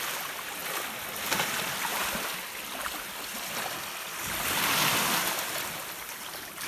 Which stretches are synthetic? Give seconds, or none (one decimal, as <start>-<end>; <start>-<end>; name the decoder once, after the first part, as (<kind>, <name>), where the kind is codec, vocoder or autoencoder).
none